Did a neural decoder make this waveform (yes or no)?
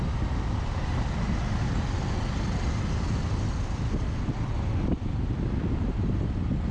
no